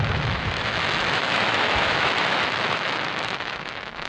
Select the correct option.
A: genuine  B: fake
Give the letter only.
B